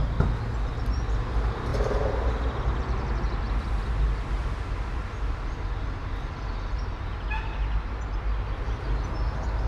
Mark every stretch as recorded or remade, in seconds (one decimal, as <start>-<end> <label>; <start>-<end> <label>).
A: 0.0-1.7 recorded; 1.7-2.3 remade; 2.3-9.7 recorded